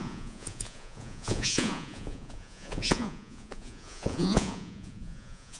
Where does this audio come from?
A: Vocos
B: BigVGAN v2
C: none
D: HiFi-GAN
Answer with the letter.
A